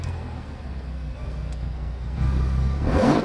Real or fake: fake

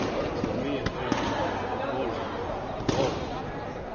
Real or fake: real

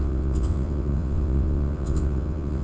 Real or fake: fake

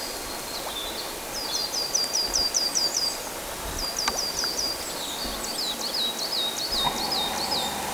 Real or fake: real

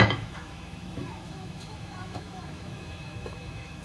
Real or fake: fake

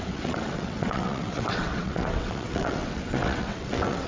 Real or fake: fake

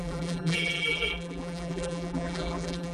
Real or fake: fake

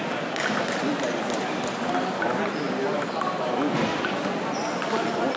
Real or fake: real